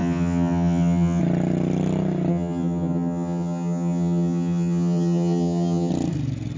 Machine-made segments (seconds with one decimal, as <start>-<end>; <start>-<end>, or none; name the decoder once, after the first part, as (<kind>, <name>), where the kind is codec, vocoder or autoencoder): 0.0-1.2 (vocoder, HiFi-GAN); 2.3-5.9